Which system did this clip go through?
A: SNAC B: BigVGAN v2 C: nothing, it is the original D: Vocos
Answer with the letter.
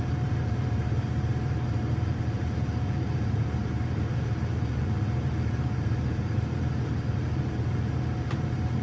B